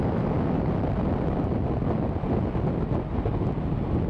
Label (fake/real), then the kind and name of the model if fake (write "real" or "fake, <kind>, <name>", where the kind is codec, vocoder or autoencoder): real